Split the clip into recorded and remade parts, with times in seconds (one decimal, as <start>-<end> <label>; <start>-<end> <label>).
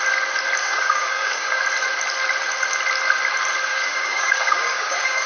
0.0-0.6 recorded; 0.6-1.6 remade; 1.6-3.7 recorded; 3.7-5.3 remade